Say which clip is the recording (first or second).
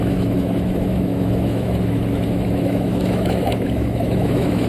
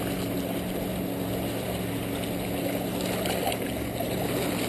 second